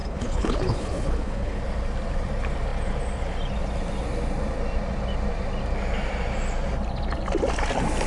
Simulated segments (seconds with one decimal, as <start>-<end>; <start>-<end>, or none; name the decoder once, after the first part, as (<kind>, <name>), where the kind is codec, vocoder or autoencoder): 0.0-1.6 (codec, HILCodec)

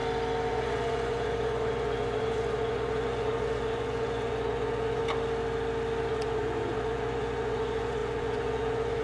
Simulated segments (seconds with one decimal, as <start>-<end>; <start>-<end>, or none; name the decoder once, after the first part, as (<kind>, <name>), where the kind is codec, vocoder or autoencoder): 0.5-5.0 (vocoder, Vocos); 6.1-9.0

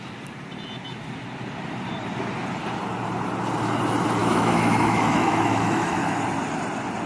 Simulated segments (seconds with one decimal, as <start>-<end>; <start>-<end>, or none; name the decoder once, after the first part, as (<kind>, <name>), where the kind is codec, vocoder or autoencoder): 4.2-6.2 (autoencoder, DAC-VAE)

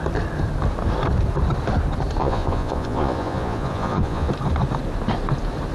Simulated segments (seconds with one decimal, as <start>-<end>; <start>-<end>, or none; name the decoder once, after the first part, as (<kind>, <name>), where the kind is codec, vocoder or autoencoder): 2.2-4.3 (vocoder, Vocos)

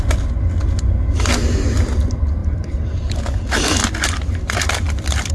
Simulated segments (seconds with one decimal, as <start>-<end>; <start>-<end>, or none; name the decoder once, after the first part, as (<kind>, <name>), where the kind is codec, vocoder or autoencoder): 2.4-3.2 (vocoder, BigVGAN v2)